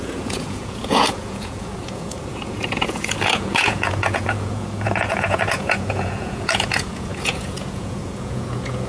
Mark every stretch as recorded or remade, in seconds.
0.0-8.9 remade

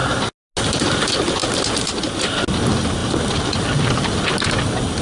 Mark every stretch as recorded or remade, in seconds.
0.0-5.0 recorded